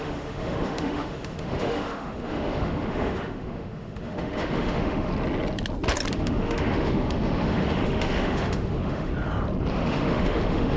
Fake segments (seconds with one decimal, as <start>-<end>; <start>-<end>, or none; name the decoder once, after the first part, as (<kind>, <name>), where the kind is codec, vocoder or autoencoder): 0.0-5.1 (autoencoder, DAC-VAE); 6.1-9.1; 9.7-10.8